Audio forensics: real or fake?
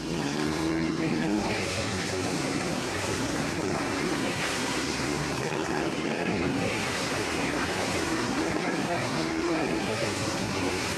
fake